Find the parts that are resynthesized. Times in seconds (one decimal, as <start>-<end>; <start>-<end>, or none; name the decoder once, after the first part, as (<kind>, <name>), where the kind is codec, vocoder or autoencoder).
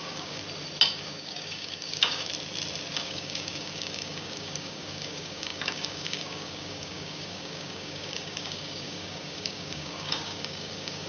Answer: 0.0-0.4 (codec, DAC); 1.0-2.3; 2.9-11.1